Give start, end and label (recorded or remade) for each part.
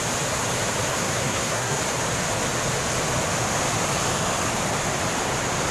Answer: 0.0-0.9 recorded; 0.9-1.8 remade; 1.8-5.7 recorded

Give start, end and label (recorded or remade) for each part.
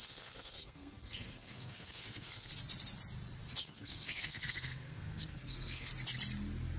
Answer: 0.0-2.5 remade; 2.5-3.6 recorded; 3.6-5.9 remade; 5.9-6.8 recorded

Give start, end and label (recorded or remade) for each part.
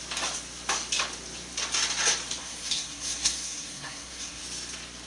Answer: 0.0-2.4 recorded; 2.4-4.4 remade; 4.4-5.1 recorded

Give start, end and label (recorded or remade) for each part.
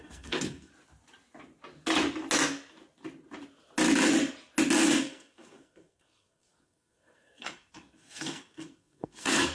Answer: 0.0-0.7 remade; 0.7-4.9 recorded; 4.9-9.5 remade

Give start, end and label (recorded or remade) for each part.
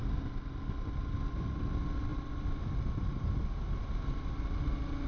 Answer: 0.0-5.1 recorded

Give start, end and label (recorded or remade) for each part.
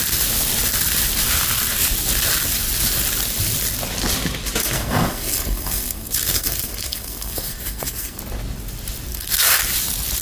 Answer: 0.0-4.6 recorded; 4.6-8.2 remade; 8.2-9.1 recorded; 9.1-9.6 remade; 9.6-10.2 recorded